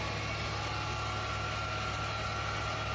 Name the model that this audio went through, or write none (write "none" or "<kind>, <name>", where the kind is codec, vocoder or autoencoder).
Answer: none